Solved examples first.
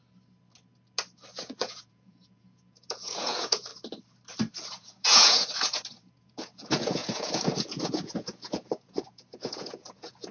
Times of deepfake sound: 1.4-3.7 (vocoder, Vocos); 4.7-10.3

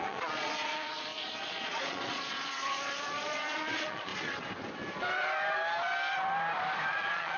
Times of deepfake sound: 0.0-4.1 (vocoder, Vocos); 6.9-7.4

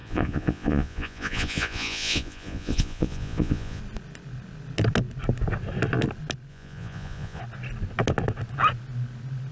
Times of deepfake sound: 0.0-3.8 (vocoder, Vocos); 6.5-7.4

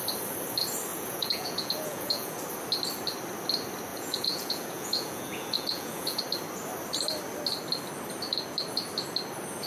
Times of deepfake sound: 0.9-2.4 (vocoder, Vocos); 3.9-6.2

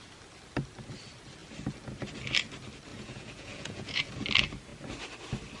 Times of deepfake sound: 2.9-4.1 (vocoder, Vocos)

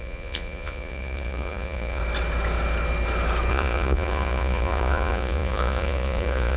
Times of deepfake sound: 0.0-2.0 (vocoder, Vocos); 3.5-6.6

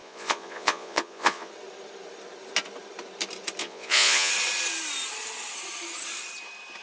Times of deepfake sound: 0.0-1.5 (vocoder, Vocos); 3.6-4.3